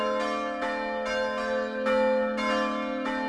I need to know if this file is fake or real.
real